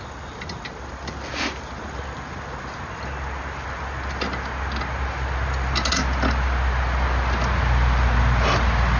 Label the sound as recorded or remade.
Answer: recorded